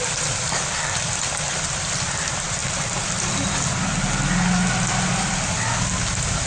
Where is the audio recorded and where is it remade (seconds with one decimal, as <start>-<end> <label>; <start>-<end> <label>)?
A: 0.0-2.6 remade; 2.6-6.5 recorded